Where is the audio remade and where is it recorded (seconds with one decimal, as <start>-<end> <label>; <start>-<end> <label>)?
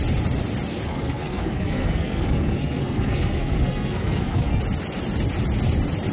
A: 0.0-0.9 recorded; 0.9-4.6 remade; 4.6-6.1 recorded